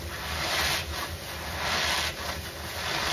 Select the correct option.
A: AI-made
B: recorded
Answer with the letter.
B